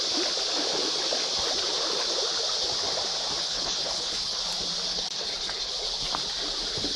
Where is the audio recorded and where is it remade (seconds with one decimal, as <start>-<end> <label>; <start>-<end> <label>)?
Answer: 0.0-3.4 recorded; 3.4-4.4 remade; 4.4-4.9 recorded; 4.9-5.7 remade; 5.7-7.0 recorded